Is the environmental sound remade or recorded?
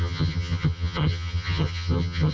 remade